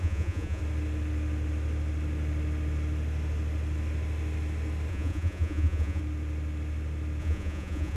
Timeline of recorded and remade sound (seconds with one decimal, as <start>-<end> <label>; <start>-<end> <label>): 0.0-0.6 remade; 0.6-4.9 recorded; 4.9-6.0 remade; 6.0-7.2 recorded; 7.2-8.0 remade